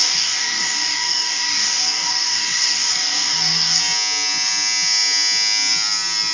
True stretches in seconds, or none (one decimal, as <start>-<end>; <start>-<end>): 3.8-6.3